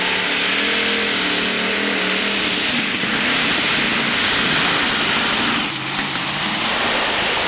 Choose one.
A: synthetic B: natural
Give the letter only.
B